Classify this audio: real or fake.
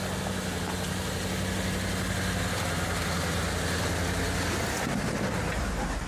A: real